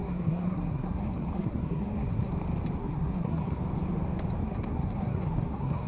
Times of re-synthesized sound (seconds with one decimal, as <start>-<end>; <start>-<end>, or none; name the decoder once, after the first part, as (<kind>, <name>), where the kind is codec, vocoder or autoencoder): 0.0-2.3 (codec, SNAC); 2.8-3.6; 4.4-5.9

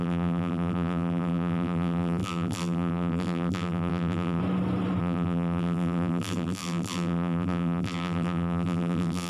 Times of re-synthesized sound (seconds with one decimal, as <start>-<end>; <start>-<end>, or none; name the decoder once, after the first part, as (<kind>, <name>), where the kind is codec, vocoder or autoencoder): 0.0-4.4 (vocoder, BigVGAN v2); 5.0-9.3

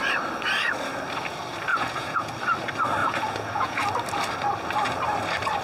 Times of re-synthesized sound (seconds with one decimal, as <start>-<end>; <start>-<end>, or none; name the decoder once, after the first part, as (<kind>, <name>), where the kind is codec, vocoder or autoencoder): 1.7-2.3 (vocoder, Vocos); 3.0-3.8